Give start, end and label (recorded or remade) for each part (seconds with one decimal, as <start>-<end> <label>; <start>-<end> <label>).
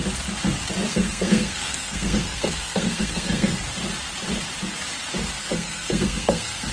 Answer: 0.0-0.9 recorded; 0.9-3.6 remade; 3.6-5.4 recorded; 5.4-6.7 remade